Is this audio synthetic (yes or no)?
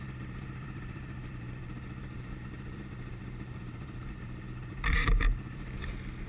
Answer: yes